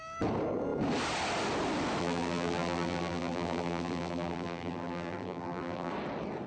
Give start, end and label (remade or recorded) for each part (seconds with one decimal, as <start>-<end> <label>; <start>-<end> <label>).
0.0-2.0 recorded; 2.0-5.9 remade; 5.9-6.5 recorded